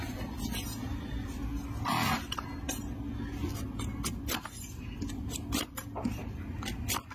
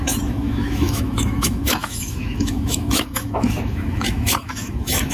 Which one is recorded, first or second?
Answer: first